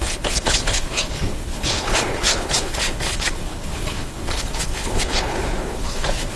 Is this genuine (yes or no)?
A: no